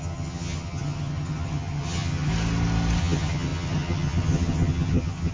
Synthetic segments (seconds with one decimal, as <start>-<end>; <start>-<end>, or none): 0.0-2.3; 3.0-5.3